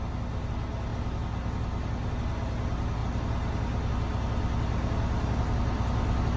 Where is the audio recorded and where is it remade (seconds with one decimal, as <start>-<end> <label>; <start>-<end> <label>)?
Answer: 0.0-6.4 recorded